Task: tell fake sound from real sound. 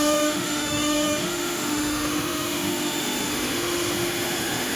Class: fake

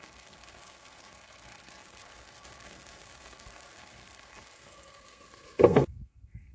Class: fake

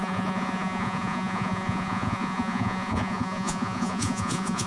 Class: fake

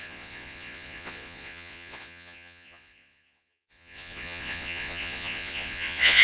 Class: fake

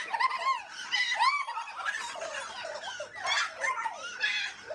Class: real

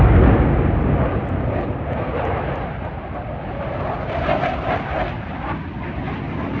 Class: real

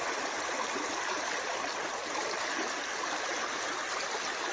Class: real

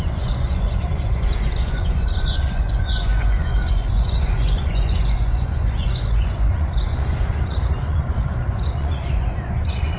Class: fake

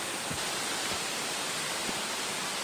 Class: fake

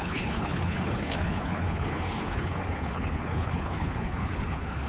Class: fake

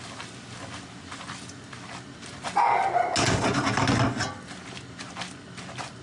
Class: real